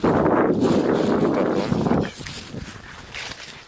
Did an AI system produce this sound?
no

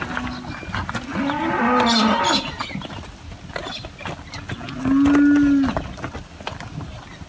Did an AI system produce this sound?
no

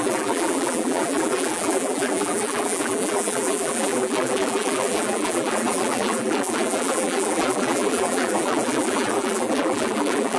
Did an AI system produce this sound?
yes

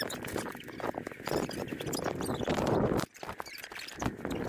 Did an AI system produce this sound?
no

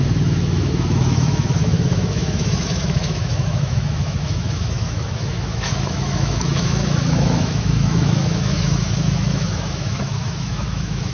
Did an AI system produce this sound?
yes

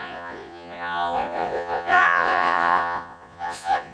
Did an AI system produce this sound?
yes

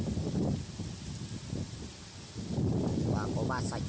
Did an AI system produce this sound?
no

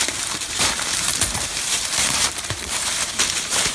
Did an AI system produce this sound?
yes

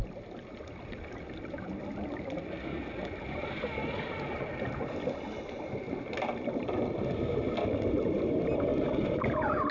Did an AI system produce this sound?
no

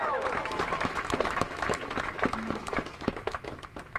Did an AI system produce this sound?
yes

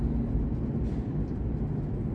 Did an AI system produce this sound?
no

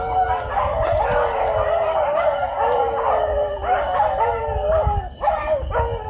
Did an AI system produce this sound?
no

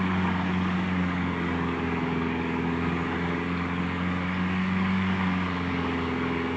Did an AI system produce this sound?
yes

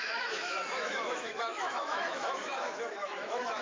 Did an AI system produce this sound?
yes